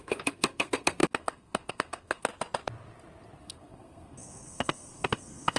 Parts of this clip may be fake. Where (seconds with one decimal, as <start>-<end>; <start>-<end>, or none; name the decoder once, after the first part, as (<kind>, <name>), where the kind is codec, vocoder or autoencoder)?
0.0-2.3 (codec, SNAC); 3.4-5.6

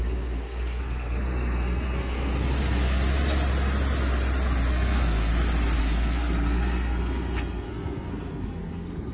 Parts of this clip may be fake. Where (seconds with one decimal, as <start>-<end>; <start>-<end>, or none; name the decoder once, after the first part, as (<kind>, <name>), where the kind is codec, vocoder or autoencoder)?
0.0-2.3 (codec, SNAC); 4.7-5.3; 5.8-9.1

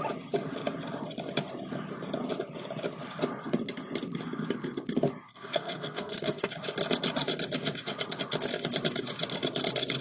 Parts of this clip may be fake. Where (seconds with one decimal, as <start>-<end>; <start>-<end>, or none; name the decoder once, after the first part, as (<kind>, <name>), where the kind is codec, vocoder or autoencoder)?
5.3-6.5 (codec, SNAC)

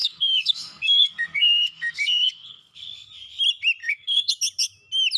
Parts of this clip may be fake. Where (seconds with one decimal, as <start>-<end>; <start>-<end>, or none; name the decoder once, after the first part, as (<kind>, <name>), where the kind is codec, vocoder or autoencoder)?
0.0-3.1 (codec, SNAC); 3.8-4.3

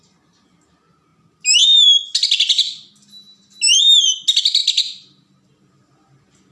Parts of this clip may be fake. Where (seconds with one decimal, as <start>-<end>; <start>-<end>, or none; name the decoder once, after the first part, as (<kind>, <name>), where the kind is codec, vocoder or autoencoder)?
none

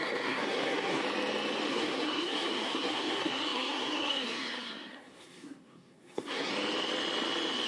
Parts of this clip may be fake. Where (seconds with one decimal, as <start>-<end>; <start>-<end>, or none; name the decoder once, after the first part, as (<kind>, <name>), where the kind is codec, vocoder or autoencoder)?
0.0-1.0 (codec, SNAC); 1.7-6.5

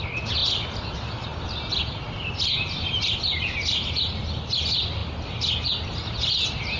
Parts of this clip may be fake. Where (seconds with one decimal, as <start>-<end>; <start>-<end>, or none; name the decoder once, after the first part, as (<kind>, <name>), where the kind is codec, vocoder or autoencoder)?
none

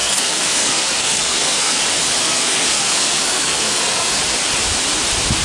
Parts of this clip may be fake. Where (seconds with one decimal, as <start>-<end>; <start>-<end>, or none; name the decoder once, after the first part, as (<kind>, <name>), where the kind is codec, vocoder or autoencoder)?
0.0-1.8 (codec, SNAC); 2.2-4.2